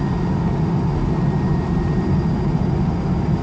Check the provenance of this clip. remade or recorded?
recorded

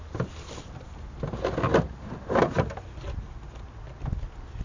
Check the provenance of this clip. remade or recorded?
recorded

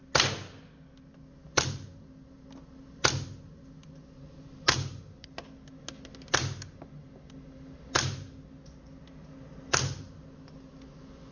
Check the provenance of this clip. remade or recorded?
recorded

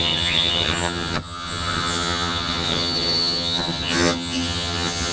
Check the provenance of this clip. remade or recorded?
remade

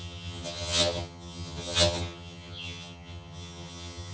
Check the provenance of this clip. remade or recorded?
remade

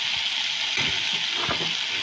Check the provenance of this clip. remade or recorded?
recorded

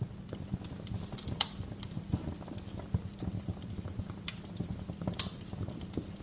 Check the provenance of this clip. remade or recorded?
recorded